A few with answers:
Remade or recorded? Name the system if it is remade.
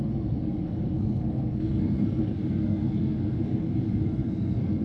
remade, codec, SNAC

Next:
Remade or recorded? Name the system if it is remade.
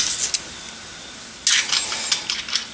recorded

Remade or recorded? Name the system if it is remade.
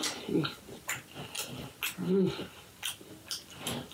recorded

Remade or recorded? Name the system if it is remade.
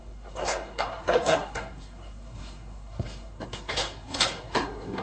remade, codec, SNAC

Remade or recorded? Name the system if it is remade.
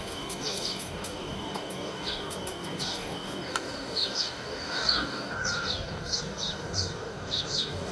remade, codec, DAC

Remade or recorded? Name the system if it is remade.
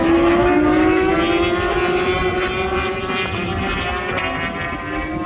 recorded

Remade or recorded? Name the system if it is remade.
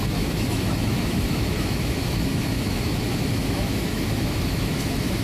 remade, autoencoder, DAC-VAE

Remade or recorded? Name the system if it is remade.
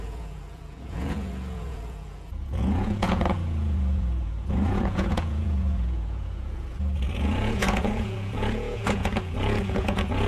remade, vocoder, Vocos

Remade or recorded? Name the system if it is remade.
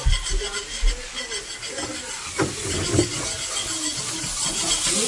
recorded